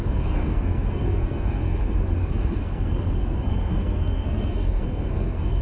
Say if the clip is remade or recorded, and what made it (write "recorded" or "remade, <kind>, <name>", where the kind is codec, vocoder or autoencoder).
remade, codec, SNAC